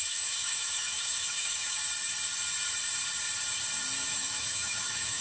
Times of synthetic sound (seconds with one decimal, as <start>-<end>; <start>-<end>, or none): 0.0-1.8; 4.1-5.2